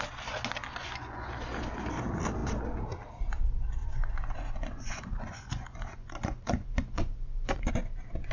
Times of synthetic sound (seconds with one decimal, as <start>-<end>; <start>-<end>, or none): 0.8-1.3; 3.8-7.7